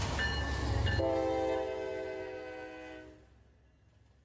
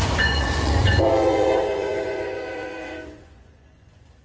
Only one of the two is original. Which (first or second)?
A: first